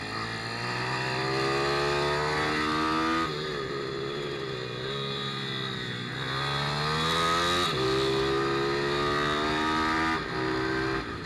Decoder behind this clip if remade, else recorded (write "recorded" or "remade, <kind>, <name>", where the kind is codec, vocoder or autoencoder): recorded